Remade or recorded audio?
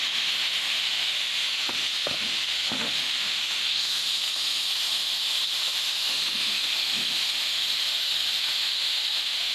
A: remade